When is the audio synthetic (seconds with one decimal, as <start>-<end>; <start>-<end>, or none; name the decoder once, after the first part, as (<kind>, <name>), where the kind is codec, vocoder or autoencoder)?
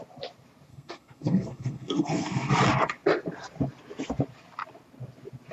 0.7-2.5 (codec, SNAC)